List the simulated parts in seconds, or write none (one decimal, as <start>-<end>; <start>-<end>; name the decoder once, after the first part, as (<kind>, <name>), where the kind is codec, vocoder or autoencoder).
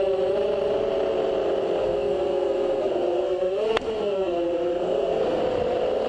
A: 1.8-5.4 (codec, SNAC)